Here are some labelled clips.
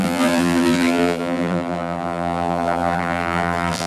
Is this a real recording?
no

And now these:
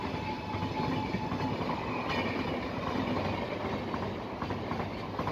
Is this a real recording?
yes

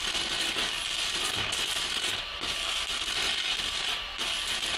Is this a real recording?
yes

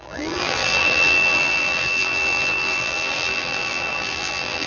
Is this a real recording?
no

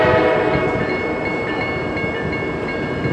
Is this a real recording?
yes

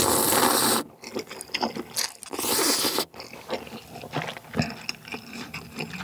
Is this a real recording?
yes